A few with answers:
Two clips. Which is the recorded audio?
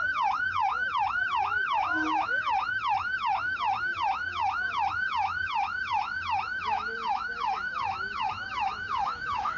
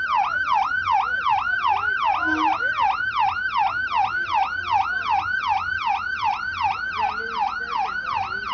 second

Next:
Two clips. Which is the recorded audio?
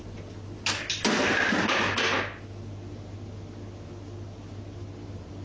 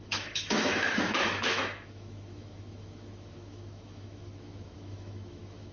first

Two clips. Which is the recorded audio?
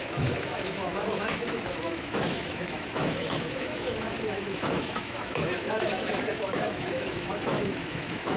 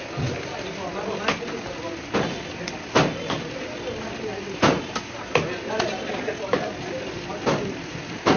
second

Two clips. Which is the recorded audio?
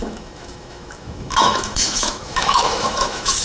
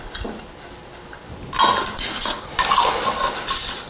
second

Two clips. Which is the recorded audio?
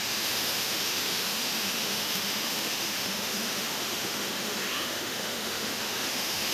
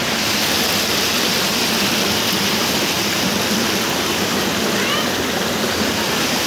second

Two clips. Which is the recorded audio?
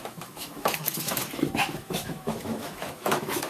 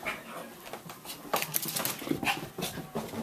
second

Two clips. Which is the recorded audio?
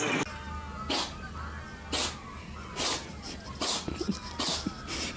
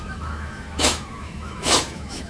first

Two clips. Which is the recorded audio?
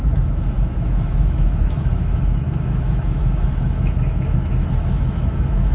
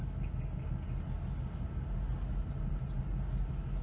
second